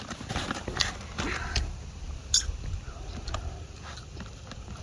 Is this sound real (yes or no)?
yes